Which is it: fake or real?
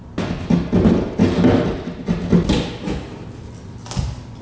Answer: real